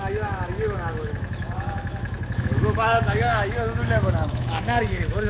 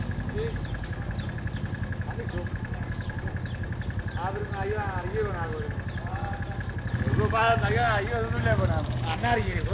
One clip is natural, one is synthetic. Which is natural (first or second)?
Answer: second